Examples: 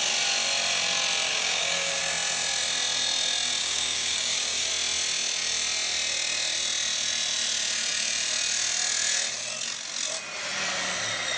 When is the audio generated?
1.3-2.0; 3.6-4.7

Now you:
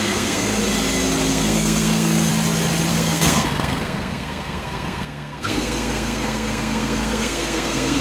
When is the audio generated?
0.0-0.6; 1.3-2.3; 2.9-8.0